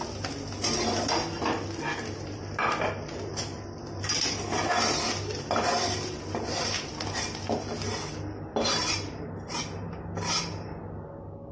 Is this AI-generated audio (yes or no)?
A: no